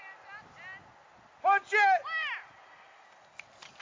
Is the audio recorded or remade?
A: recorded